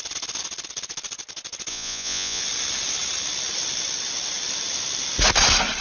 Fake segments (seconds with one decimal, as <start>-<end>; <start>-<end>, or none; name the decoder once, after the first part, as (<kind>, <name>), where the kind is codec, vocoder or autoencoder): 1.7-2.4 (vocoder, Vocos)